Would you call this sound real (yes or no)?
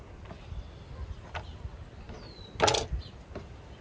yes